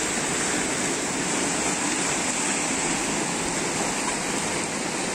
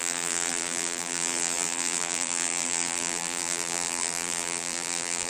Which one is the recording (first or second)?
first